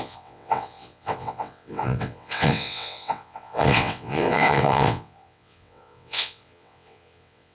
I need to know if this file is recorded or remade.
remade